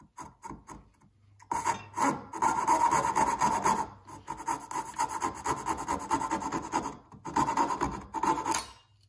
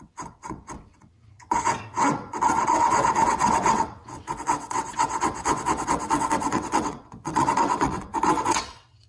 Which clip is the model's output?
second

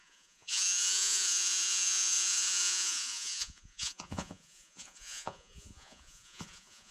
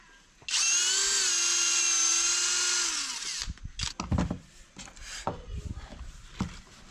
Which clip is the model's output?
first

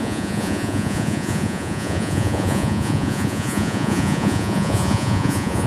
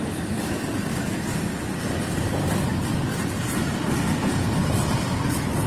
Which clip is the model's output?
first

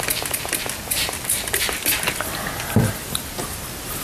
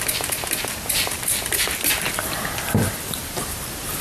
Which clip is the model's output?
second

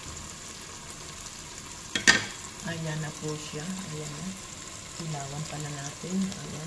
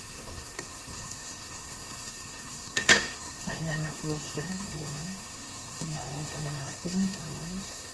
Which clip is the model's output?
second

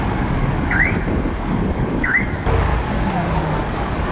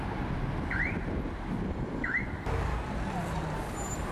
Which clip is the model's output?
first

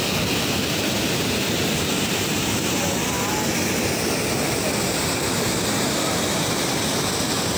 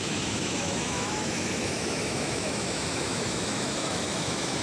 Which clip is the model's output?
second